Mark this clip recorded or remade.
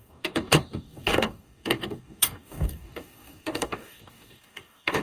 remade